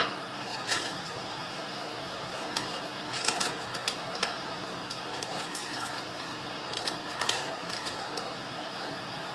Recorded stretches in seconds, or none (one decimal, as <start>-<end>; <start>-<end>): none